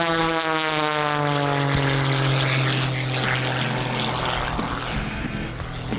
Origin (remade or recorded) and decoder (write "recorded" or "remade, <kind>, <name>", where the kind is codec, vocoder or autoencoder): recorded